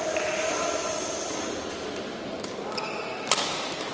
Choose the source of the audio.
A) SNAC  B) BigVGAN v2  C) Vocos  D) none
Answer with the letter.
D